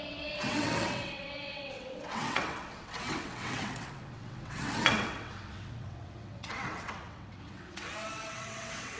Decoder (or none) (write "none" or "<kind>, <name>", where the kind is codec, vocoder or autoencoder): vocoder, WaveNeXt